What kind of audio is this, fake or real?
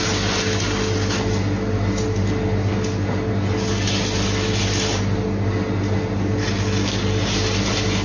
real